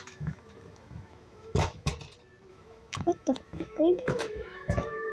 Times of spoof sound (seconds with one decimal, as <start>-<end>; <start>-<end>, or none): 0.0-1.9; 2.5-5.1